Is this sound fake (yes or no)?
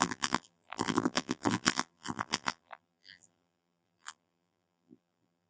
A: yes